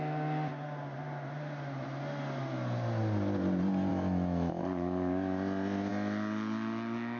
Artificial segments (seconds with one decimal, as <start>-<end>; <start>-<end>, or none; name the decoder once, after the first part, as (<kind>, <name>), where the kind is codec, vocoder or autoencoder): 3.9-4.6 (autoencoder, DAC-VAE)